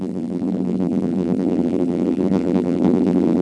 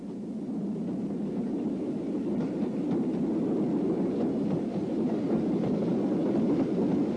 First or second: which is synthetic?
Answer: first